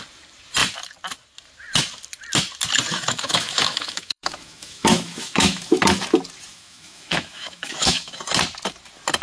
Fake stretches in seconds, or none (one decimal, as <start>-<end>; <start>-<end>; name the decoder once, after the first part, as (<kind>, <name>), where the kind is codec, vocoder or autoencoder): 2.9-5.8 (autoencoder, DAC-VAE); 6.5-8.2

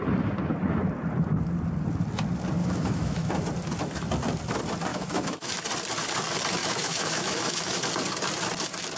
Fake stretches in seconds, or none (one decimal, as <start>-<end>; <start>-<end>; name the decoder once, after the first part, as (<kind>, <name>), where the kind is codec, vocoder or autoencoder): 2.6-3.3 (autoencoder, DAC-VAE); 4.9-5.6; 6.6-7.8

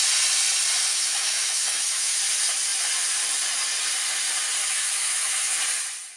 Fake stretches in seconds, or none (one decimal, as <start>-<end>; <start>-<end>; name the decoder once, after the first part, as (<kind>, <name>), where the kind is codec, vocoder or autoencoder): 0.9-2.2 (autoencoder, DAC-VAE); 4.6-5.6

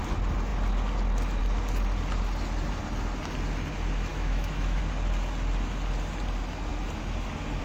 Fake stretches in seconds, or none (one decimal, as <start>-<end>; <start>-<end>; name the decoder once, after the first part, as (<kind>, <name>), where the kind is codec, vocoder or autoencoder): 4.1-4.8 (autoencoder, DAC-VAE)

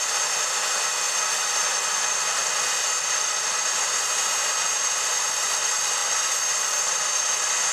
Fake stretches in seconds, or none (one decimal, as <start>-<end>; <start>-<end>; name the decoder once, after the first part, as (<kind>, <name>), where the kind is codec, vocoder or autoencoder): none

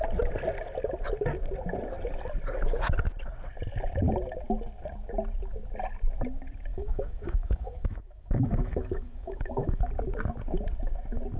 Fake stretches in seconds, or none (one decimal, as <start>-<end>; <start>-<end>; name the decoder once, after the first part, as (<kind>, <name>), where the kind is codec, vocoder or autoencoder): 6.7-9.8 (autoencoder, DAC-VAE)